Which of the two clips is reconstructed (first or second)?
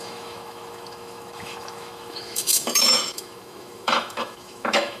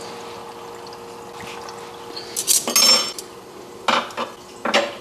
first